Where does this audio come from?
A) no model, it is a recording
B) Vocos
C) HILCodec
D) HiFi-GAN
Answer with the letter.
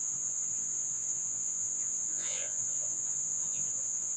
B